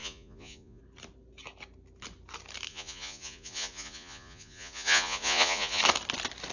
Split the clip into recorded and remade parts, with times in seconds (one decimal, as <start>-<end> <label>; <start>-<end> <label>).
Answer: 0.0-0.8 remade; 0.8-2.7 recorded; 2.7-5.8 remade; 5.8-6.5 recorded